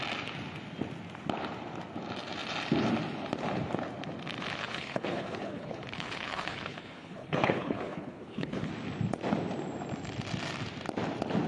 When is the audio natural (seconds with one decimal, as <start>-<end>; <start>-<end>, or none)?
0.0-4.6; 8.7-11.5